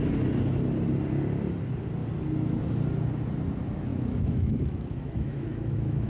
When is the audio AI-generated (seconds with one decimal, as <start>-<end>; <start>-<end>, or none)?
3.9-6.1